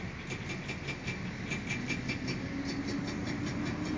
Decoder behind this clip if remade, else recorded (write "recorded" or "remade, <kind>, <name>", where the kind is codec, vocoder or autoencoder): recorded